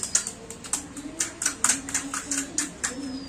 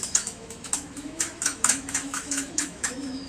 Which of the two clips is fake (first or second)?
second